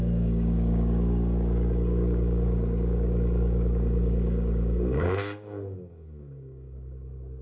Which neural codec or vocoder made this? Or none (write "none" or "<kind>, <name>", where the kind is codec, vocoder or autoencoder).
codec, DAC